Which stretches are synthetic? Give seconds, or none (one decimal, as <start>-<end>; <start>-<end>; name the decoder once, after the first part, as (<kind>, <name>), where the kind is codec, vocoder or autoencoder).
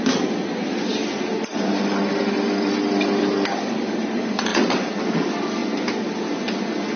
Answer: 4.5-5.0 (vocoder, WaveNeXt)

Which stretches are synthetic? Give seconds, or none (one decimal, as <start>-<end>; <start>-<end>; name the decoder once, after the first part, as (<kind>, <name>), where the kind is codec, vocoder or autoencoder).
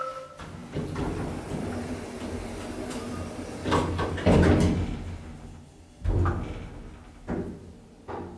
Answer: none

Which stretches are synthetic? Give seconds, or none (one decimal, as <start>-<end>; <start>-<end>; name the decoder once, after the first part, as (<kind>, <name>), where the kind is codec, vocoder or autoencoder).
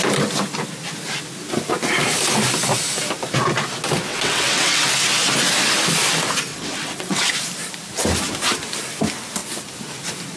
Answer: 4.1-4.9 (vocoder, WaveNeXt); 6.5-7.3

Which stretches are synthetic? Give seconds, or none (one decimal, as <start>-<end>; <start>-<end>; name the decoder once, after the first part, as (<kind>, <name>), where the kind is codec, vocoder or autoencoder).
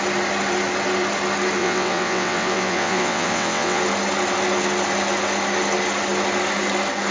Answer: 1.6-3.8 (vocoder, WaveNeXt)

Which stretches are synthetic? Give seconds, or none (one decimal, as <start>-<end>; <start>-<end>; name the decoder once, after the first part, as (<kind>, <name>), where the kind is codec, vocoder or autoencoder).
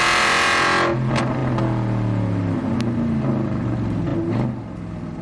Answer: none